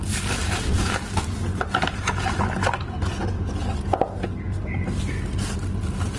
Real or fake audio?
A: real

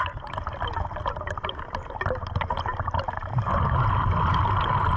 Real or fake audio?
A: real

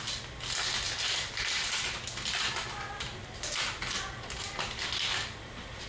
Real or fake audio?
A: real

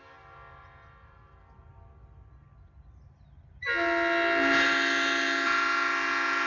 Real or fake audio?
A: real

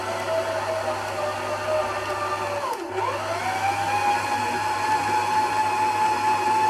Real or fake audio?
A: real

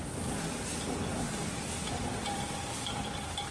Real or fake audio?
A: real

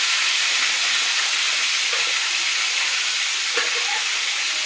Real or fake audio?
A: real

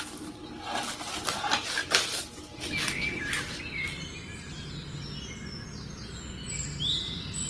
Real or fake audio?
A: real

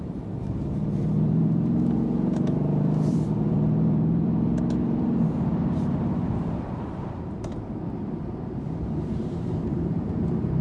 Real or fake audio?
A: fake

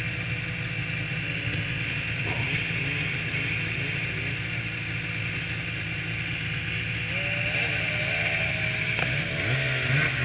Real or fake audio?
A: real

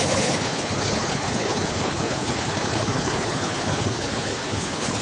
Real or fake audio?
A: fake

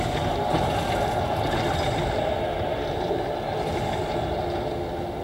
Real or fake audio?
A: real